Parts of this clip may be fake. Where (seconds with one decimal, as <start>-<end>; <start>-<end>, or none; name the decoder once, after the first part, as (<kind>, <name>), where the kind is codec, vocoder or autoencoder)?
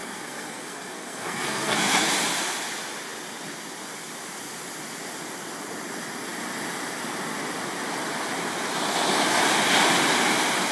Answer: 0.0-2.1 (codec, SNAC)